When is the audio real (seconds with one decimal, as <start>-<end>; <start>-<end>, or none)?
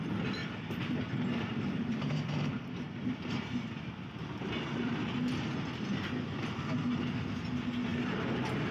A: 0.0-0.4; 2.5-8.7